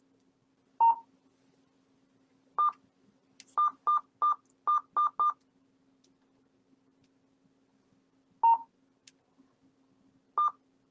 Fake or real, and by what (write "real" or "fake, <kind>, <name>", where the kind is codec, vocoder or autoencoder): real